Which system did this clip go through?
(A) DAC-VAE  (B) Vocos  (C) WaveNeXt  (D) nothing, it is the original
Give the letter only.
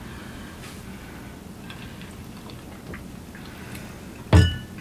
D